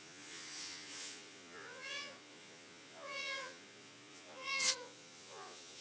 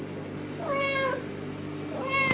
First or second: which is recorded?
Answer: second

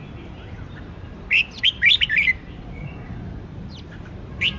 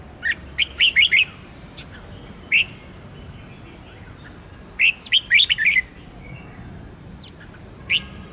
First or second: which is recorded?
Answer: second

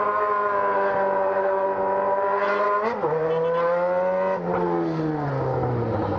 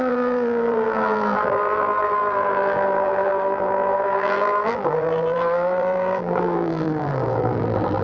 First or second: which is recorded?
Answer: first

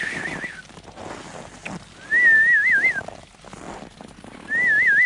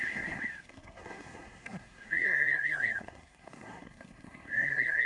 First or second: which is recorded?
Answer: first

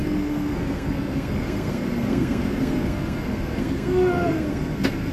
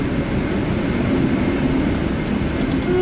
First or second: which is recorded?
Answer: second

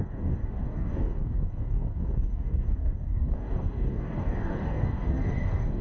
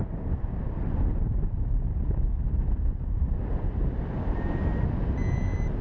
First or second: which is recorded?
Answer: second